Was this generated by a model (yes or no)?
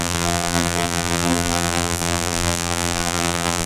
yes